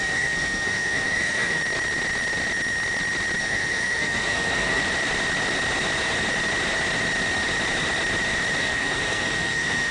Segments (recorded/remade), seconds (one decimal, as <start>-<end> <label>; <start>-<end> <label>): 0.0-1.6 remade; 1.6-3.4 recorded; 3.4-4.8 remade; 4.8-8.6 recorded; 8.6-9.9 remade